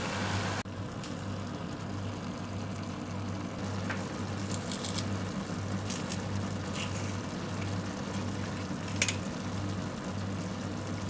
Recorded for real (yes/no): yes